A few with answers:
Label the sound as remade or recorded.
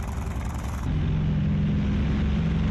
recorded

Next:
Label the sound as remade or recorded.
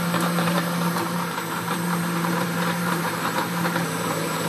remade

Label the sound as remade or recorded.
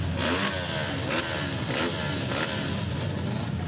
recorded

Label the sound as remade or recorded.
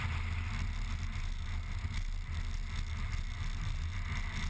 recorded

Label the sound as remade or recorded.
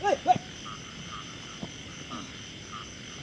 recorded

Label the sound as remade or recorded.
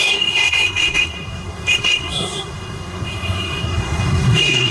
remade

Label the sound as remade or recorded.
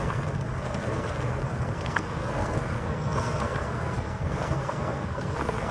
remade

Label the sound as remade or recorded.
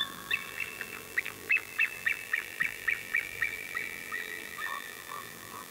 remade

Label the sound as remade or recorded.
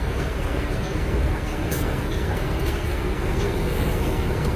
remade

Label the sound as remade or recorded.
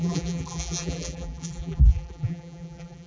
remade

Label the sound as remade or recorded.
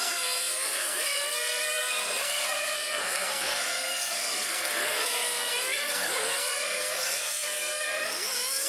remade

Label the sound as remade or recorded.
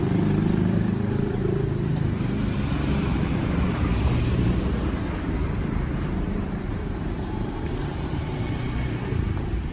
remade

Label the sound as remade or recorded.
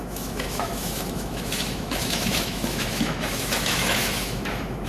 remade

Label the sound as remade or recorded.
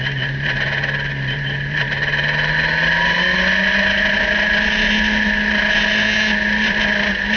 recorded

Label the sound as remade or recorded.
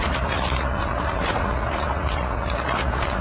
remade